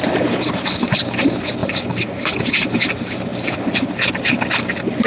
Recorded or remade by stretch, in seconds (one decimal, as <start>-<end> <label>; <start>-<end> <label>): 0.0-1.6 recorded; 1.6-2.8 remade; 2.8-5.1 recorded